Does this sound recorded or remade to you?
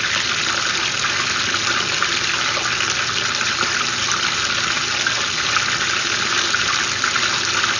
recorded